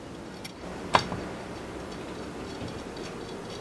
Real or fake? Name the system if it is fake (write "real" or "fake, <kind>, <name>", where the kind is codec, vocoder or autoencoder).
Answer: fake, vocoder, BigVGAN v2